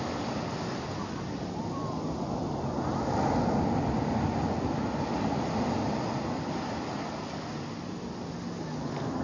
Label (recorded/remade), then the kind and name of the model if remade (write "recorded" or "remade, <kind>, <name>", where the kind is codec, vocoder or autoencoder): recorded